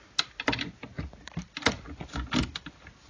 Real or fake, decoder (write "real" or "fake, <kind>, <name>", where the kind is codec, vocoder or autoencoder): real